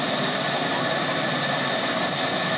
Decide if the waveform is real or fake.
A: real